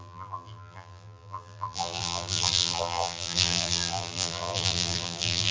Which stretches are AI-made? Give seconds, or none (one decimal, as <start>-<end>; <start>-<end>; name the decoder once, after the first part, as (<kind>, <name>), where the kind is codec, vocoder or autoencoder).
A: 0.0-5.5 (vocoder, BigVGAN v2)